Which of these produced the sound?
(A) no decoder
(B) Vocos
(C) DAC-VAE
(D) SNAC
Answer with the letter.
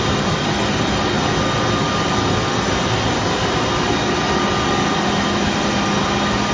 A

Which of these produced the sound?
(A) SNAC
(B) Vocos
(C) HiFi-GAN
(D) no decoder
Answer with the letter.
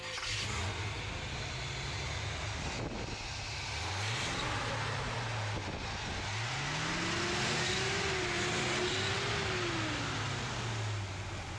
D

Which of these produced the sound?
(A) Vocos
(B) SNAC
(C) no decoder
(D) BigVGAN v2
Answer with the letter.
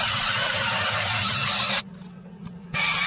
C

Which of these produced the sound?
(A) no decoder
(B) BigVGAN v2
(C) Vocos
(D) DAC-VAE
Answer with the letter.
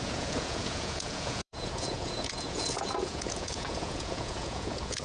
C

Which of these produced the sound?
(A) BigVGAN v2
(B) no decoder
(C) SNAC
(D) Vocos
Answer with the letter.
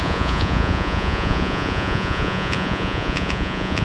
D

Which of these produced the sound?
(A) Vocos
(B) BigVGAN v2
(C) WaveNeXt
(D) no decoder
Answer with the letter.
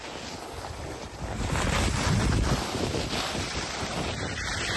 D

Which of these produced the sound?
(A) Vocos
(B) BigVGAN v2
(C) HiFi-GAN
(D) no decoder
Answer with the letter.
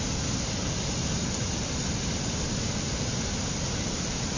D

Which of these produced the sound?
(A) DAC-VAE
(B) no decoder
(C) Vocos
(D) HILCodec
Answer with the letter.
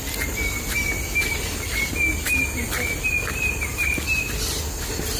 B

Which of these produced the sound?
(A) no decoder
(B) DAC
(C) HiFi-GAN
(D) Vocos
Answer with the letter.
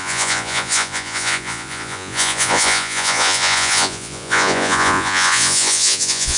D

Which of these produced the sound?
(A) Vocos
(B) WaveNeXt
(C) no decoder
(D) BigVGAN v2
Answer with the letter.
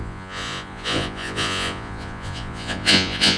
A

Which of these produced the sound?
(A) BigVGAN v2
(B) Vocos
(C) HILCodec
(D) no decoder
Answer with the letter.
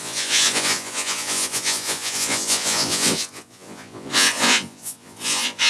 B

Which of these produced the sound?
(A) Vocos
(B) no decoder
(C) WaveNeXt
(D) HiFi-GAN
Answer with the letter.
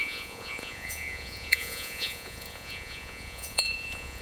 A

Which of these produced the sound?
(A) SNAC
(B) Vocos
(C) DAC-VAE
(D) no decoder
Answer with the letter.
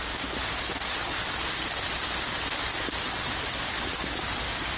D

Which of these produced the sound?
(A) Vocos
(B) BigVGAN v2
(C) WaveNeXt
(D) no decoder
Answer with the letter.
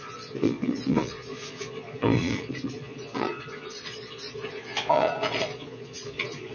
A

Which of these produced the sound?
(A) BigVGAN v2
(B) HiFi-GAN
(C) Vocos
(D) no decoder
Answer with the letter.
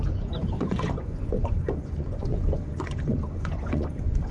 C